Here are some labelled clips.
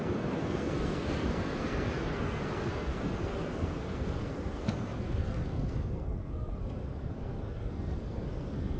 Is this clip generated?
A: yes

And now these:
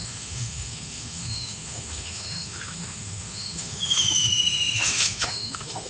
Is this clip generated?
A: yes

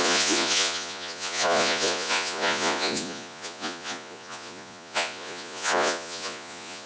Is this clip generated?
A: yes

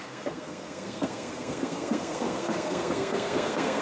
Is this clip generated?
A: yes